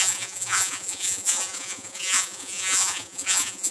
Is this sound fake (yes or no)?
yes